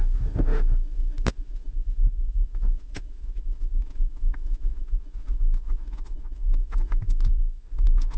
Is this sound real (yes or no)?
no